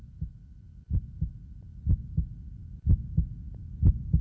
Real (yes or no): yes